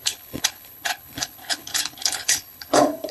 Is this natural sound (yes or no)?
no